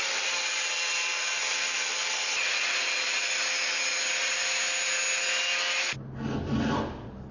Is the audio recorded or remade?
recorded